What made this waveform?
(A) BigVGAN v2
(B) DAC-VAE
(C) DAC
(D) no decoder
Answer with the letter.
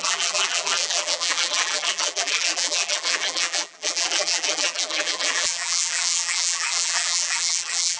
A